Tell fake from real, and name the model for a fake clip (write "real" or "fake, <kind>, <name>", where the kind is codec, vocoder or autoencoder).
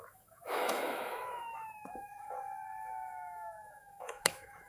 fake, autoencoder, DAC-VAE